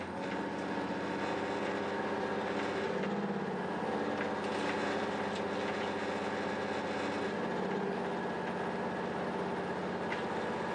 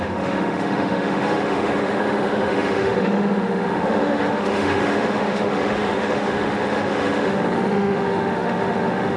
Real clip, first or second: first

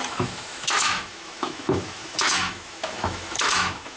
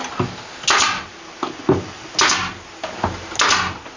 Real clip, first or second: second